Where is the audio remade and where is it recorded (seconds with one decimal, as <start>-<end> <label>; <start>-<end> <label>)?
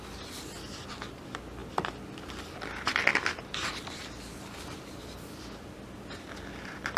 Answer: 0.0-7.0 recorded